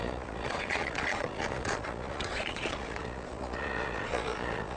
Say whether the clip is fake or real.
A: fake